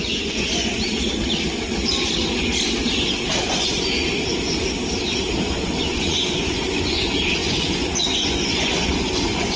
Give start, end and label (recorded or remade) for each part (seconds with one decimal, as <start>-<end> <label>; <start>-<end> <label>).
0.0-0.8 remade; 0.8-3.5 recorded; 3.5-4.0 remade; 4.0-5.4 recorded; 5.4-9.6 remade

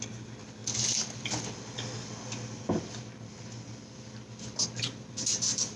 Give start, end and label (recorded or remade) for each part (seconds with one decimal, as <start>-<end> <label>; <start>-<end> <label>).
0.0-5.8 recorded